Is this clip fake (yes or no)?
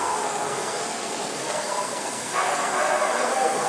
yes